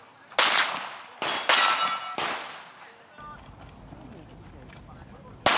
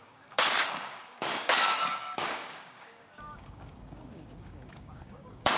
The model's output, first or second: second